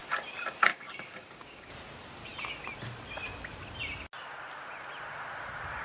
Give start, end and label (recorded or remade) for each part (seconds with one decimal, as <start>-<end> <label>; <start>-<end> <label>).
0.0-0.7 recorded; 0.7-1.7 remade; 1.7-5.8 recorded